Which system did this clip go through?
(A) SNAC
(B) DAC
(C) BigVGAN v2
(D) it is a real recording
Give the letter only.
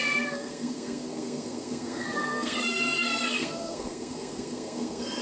A